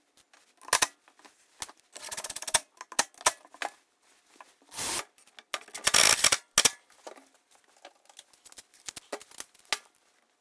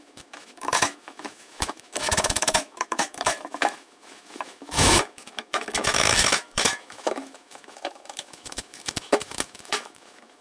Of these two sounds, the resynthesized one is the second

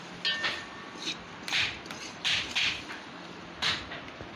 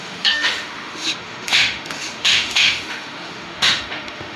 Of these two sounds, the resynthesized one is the second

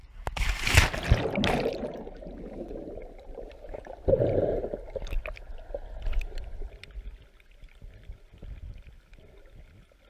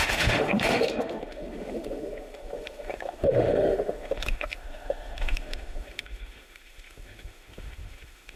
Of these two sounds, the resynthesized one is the second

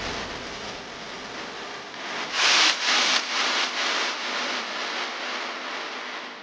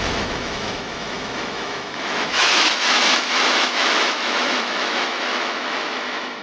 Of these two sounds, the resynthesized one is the second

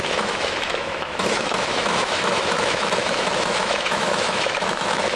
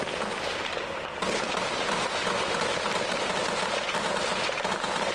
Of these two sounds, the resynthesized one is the first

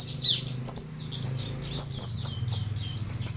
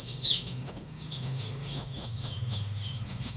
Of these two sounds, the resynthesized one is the second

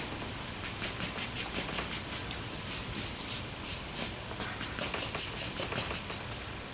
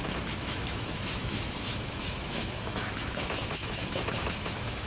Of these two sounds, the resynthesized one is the second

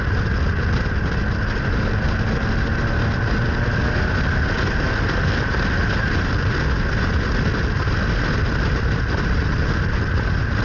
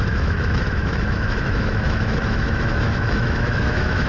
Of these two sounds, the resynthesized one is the second